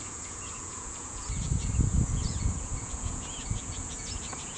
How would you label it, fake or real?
fake